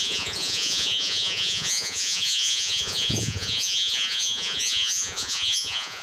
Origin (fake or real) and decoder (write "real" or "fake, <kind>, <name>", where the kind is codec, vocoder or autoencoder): fake, vocoder, Vocos